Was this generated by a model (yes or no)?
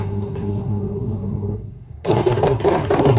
yes